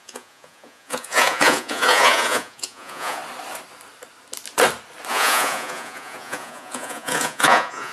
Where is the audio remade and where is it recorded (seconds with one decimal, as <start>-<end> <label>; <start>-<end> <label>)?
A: 0.0-3.2 remade; 3.2-5.1 recorded; 5.1-7.9 remade